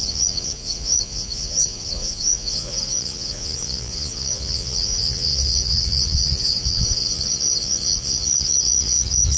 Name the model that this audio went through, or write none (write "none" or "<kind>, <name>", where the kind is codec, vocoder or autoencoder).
vocoder, Vocos